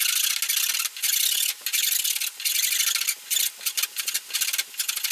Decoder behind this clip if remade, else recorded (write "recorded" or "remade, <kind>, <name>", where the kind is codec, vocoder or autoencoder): recorded